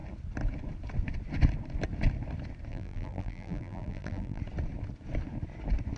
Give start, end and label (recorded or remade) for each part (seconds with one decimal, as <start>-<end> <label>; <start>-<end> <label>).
0.0-2.7 recorded; 2.7-4.4 remade; 4.4-6.0 recorded